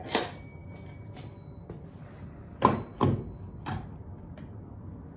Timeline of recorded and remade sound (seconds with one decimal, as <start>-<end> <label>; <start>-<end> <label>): 0.0-5.2 recorded